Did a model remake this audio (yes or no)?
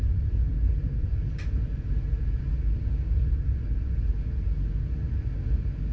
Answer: no